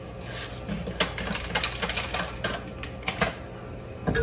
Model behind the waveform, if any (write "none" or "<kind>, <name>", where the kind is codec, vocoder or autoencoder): none